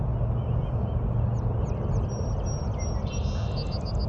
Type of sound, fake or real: real